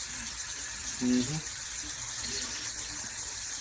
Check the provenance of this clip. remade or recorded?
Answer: recorded